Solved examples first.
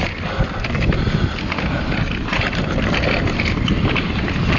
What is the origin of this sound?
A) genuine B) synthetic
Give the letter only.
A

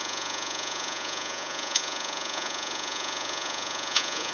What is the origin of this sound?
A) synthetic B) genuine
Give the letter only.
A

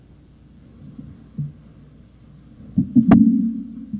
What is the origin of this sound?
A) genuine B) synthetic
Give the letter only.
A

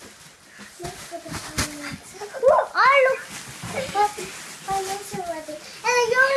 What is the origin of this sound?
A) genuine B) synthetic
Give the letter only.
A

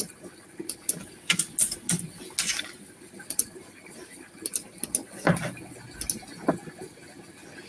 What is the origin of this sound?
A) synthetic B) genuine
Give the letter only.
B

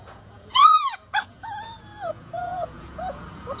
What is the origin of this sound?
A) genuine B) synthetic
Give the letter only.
B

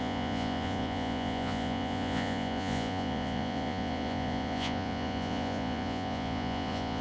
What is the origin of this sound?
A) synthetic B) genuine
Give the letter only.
A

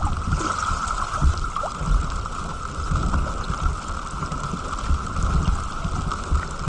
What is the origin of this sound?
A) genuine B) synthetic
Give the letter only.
A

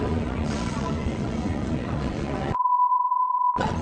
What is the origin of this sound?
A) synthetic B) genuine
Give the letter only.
A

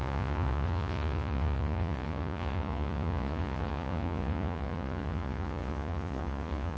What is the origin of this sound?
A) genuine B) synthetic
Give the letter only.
B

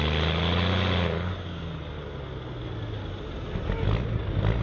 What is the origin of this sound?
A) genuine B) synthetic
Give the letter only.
A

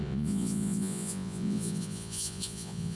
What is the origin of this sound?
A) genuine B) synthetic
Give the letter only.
B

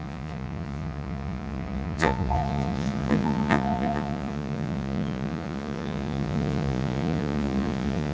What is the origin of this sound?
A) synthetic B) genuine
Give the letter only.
A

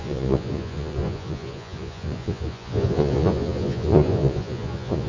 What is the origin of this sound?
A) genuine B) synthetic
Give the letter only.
B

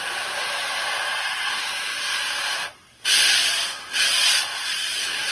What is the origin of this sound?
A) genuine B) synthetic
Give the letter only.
A